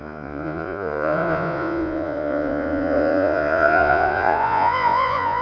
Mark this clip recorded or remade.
remade